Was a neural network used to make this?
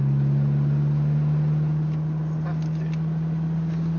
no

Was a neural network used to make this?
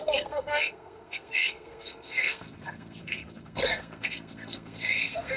yes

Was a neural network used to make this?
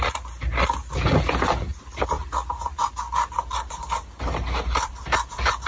no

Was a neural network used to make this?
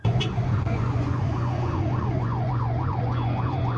yes